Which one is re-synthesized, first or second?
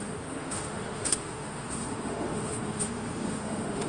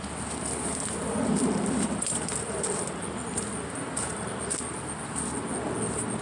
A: first